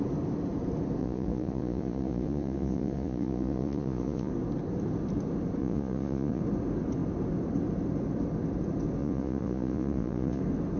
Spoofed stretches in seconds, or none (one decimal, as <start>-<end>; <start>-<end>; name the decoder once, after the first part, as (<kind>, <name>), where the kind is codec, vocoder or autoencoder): 1.0-4.3 (vocoder, Vocos); 5.6-6.4; 9.0-10.4